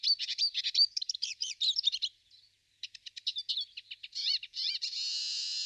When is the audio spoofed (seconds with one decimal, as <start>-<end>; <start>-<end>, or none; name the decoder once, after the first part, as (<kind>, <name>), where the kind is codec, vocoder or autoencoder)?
0.0-5.7 (vocoder, BigVGAN v2)